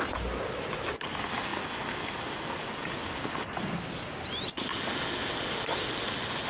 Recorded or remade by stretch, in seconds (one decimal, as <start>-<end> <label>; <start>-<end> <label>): 0.0-6.5 recorded